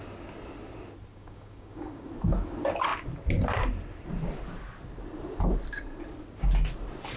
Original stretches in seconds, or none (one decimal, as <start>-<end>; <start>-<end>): 0.0-1.1; 2.1-7.2